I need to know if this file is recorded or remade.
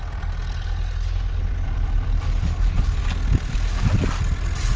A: recorded